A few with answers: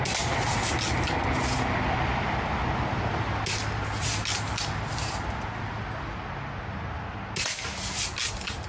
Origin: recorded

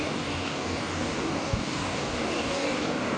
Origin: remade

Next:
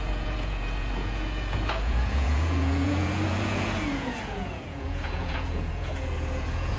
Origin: remade